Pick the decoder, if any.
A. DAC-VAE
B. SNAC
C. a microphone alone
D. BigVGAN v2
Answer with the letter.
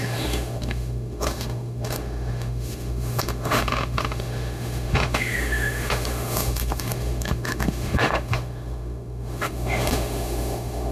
A